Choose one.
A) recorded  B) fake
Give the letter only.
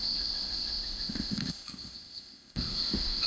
B